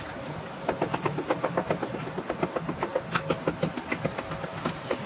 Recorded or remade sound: recorded